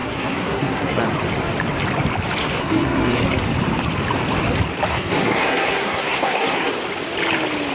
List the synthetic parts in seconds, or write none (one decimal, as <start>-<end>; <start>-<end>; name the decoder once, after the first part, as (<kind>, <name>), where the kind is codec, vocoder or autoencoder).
0.0-1.0 (codec, SNAC); 2.4-3.2; 4.9-6.7